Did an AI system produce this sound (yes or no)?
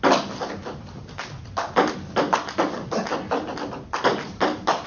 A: no